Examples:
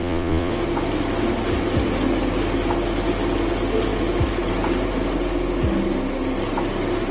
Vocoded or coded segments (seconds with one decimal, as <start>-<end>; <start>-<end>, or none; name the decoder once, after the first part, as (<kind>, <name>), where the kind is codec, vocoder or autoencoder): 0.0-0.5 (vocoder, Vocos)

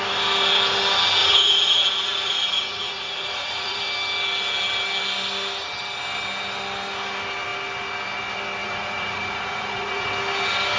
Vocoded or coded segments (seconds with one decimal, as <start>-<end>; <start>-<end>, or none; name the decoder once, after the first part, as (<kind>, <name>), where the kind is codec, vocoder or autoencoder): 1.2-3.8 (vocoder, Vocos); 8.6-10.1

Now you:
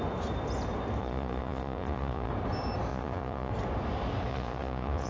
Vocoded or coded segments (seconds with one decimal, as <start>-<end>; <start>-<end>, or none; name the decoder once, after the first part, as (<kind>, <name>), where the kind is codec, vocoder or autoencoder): 1.0-2.3 (vocoder, Vocos); 2.9-3.5; 4.3-5.1

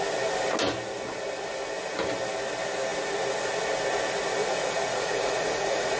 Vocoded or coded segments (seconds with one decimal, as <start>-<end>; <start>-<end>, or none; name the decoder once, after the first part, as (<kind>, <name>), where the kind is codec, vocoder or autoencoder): 4.4-6.0 (vocoder, Vocos)

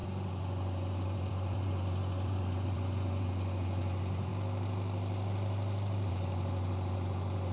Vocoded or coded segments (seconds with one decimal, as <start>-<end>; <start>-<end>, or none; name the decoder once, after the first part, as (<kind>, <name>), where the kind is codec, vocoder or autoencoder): 0.0-4.3 (vocoder, Vocos); 6.1-7.5

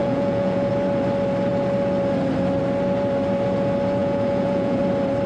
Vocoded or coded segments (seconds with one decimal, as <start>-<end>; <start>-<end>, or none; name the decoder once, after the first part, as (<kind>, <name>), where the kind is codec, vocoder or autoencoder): 0.0-0.7 (vocoder, Vocos); 4.0-4.8

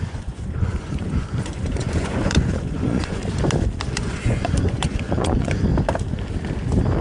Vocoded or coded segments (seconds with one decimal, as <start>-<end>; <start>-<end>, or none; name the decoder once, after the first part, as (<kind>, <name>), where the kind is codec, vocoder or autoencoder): 0.0-3.2 (vocoder, Vocos); 3.9-5.7